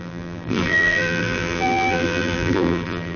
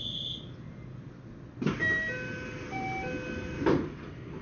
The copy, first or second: first